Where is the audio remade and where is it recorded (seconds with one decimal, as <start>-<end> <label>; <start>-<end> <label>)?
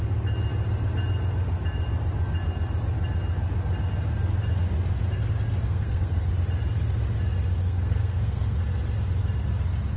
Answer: 0.0-5.6 recorded; 5.6-6.3 remade; 6.3-7.6 recorded; 7.6-8.6 remade; 8.6-10.0 recorded